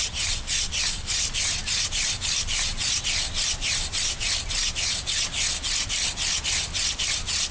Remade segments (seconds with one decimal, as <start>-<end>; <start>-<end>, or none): none